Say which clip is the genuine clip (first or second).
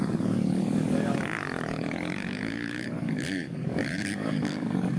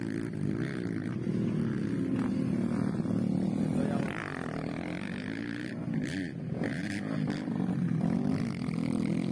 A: second